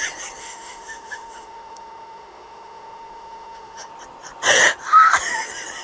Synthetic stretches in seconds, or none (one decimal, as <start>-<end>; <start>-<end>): 0.4-3.9